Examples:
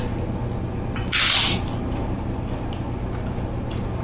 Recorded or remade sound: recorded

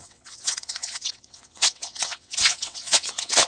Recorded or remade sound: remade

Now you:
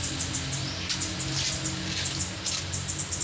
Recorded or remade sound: recorded